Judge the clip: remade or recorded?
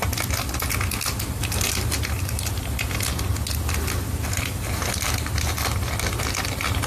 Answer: recorded